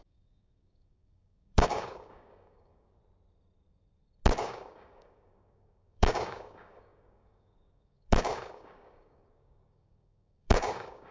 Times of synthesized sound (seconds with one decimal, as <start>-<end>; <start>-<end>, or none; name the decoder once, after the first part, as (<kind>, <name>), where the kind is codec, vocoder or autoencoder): 0.0-3.0 (codec, DAC); 4.4-11.1

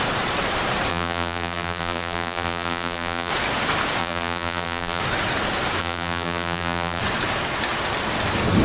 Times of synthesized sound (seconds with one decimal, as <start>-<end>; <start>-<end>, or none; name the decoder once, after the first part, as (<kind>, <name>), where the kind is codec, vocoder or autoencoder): 0.9-3.3 (vocoder, BigVGAN v2); 4.0-5.0; 5.8-7.0